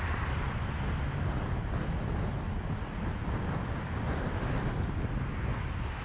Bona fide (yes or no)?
yes